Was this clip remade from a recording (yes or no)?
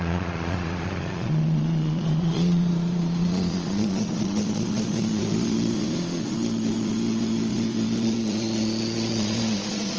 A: yes